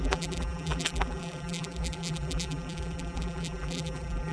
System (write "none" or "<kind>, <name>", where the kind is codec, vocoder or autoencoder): vocoder, BigVGAN v2